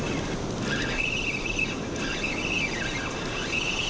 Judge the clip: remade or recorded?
recorded